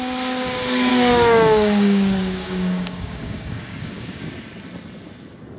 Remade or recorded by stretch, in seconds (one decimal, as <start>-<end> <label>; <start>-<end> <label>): 0.0-0.9 recorded; 0.9-4.3 remade; 4.3-5.6 recorded